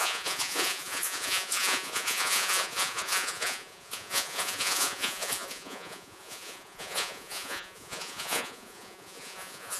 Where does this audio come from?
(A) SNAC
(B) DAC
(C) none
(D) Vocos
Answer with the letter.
D